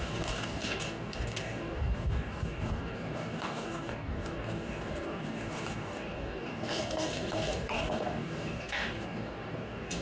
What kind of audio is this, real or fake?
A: fake